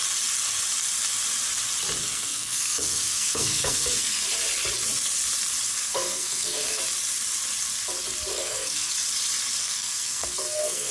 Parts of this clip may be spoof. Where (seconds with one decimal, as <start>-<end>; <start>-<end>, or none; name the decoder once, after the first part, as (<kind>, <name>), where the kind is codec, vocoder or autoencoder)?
2.0-4.2 (codec, SNAC); 5.8-6.8; 8.3-8.9; 9.6-10.9